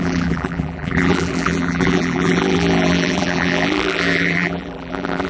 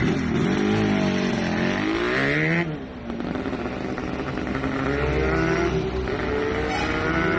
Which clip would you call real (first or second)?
second